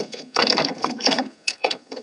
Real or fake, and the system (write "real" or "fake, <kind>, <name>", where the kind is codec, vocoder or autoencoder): fake, codec, SNAC